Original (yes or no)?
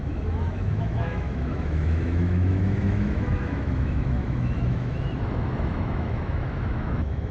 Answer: no